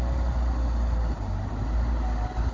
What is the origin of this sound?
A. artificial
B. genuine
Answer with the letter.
B